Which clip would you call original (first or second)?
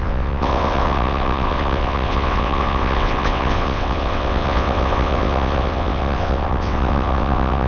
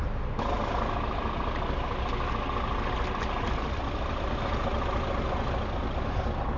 second